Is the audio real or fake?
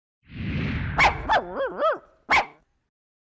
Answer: real